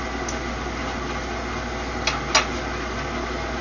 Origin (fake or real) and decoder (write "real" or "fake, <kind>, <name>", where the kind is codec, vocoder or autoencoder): real